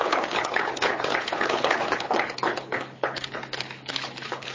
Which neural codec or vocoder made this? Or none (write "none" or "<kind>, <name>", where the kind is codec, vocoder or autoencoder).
codec, HILCodec